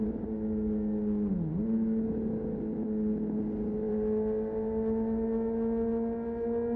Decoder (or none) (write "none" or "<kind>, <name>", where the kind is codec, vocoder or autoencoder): none